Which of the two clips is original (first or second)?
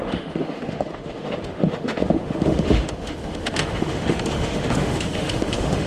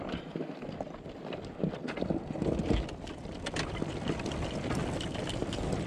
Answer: second